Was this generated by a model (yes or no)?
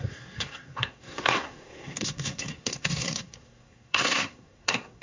yes